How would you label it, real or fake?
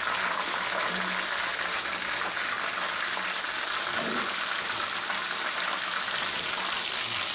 real